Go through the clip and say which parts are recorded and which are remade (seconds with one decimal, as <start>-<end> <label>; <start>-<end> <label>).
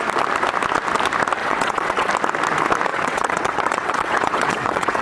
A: 0.0-1.4 recorded; 1.4-2.1 remade; 2.1-2.9 recorded; 2.9-5.0 remade